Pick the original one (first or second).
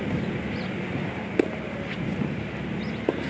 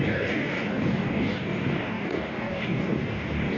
first